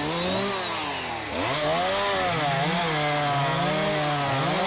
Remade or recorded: recorded